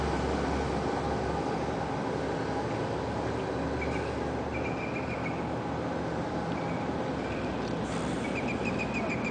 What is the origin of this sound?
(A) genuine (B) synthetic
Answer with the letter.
A